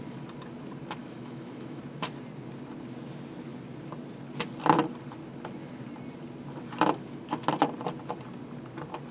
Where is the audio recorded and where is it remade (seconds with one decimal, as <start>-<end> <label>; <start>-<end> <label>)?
0.0-1.0 recorded; 1.0-1.8 remade; 1.8-9.1 recorded